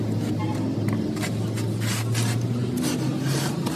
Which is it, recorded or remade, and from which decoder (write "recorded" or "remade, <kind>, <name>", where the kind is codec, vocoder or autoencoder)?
recorded